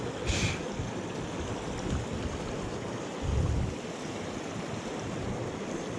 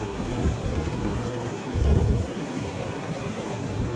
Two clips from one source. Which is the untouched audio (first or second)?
first